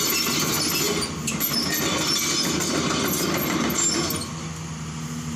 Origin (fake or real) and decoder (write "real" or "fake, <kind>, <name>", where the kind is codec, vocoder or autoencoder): real